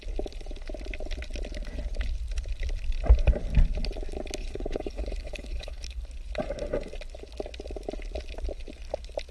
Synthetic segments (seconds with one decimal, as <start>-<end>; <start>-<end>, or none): 4.4-6.0